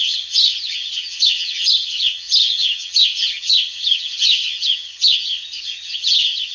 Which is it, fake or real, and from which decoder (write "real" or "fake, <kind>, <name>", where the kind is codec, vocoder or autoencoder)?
fake, vocoder, HiFi-GAN